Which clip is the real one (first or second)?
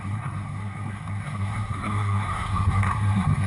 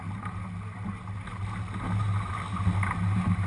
second